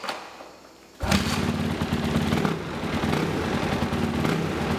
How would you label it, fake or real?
real